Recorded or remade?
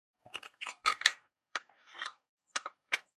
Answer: remade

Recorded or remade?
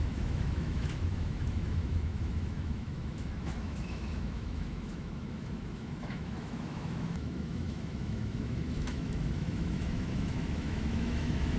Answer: remade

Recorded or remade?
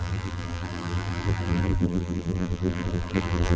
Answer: remade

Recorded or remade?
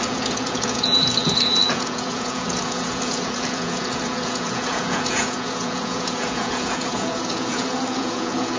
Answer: remade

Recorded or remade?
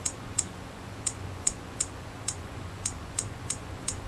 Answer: remade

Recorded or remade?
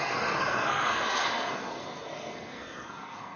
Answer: remade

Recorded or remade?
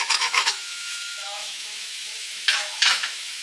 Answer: remade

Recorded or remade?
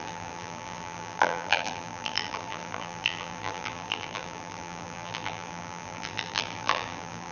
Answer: remade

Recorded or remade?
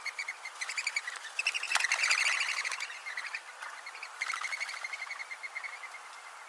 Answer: recorded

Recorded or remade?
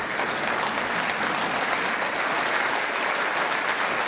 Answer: recorded